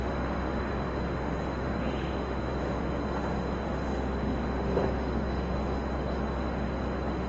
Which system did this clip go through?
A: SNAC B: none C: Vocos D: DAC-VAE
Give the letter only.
D